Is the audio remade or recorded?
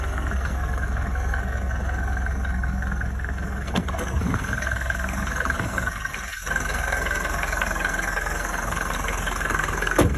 remade